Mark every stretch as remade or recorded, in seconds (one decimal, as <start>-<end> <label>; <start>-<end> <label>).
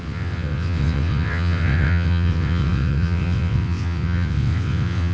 0.0-5.1 remade